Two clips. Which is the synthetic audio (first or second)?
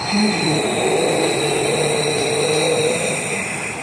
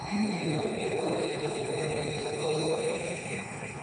second